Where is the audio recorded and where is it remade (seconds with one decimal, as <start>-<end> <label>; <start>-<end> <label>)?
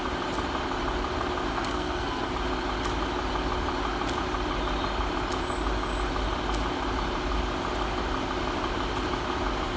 0.0-1.5 recorded; 1.5-2.3 remade; 2.3-9.8 recorded